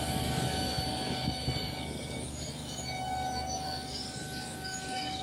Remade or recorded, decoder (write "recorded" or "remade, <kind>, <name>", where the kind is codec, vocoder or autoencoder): remade, codec, DAC